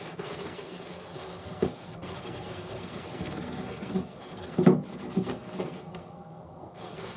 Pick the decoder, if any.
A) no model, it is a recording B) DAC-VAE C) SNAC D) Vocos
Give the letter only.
C